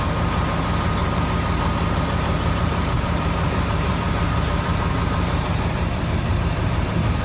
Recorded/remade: remade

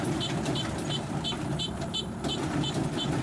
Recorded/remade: remade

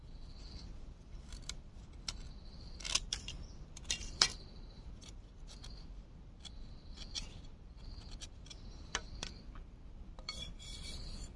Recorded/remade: remade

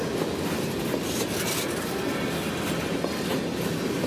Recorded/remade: recorded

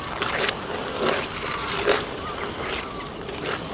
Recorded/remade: recorded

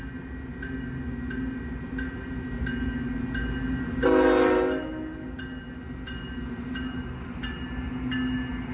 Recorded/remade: recorded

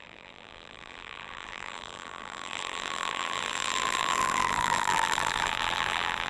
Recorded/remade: remade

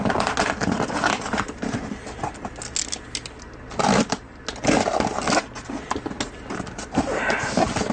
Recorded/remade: recorded